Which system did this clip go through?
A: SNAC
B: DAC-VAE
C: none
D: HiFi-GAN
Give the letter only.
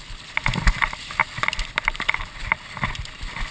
C